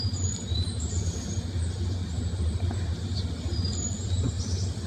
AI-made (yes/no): no